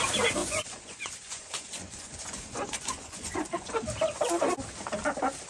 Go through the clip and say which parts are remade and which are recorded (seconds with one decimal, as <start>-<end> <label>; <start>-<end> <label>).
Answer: 0.0-0.4 recorded; 0.4-3.7 remade; 3.7-5.5 recorded